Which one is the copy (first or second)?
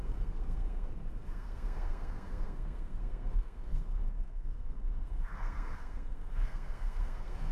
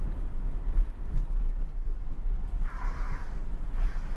first